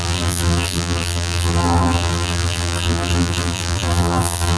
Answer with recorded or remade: remade